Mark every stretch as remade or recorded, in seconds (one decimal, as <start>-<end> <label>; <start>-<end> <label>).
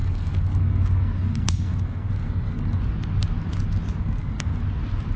0.0-2.8 remade; 2.8-4.0 recorded; 4.0-4.6 remade; 4.6-5.2 recorded